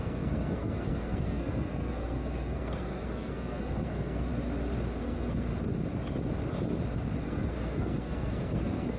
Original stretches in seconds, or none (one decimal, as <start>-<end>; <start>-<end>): 4.3-5.0; 5.5-7.2